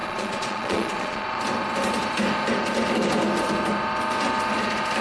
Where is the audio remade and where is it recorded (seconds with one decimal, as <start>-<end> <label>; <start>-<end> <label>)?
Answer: 0.0-1.4 remade; 1.4-5.0 recorded